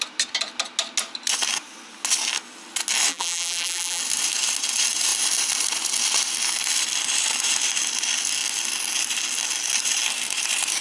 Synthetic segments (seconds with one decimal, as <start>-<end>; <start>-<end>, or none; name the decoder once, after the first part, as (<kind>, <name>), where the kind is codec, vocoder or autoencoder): 3.1-4.0 (vocoder, BigVGAN v2)